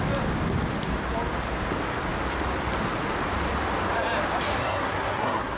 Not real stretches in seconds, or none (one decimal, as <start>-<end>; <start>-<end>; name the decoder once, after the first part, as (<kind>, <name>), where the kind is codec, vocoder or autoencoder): 4.6-5.6 (codec, SNAC)